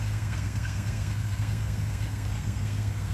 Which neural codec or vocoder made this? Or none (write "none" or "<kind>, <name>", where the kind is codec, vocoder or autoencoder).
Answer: codec, SNAC